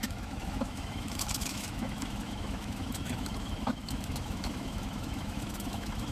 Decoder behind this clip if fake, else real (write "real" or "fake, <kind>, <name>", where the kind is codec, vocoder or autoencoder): fake, autoencoder, DAC-VAE